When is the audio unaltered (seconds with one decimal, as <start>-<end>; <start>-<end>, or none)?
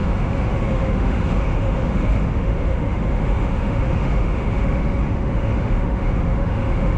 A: none